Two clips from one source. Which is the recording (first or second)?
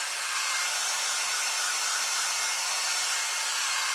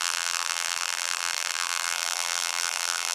first